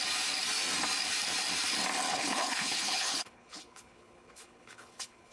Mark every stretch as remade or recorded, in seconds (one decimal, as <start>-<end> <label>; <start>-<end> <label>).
0.0-2.1 recorded; 2.1-5.3 remade